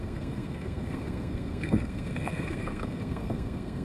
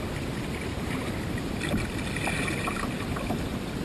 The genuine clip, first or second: second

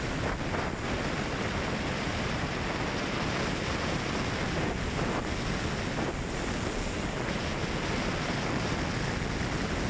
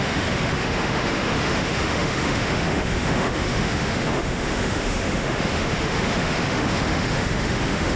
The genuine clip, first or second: first